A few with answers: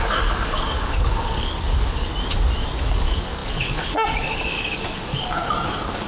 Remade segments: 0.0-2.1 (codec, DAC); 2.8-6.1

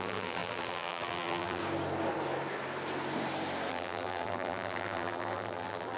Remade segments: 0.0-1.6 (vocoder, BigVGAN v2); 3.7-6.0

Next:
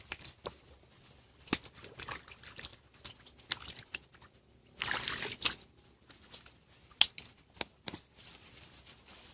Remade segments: none

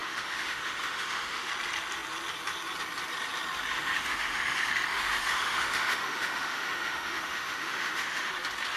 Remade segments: 0.0-1.5 (autoencoder, DAC-VAE); 3.7-8.3

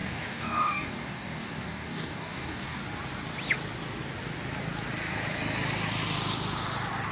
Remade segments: 0.0-2.8 (codec, DAC)

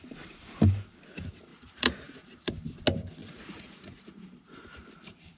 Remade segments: 1.5-2.5 (vocoder, Vocos); 3.2-4.8

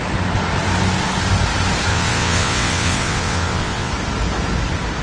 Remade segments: 1.9-3.9 (vocoder, WaveNeXt)

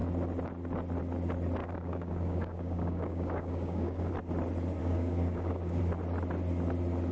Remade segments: 1.6-4.1 (codec, DAC); 4.8-5.8